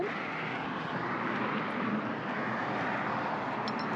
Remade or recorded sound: recorded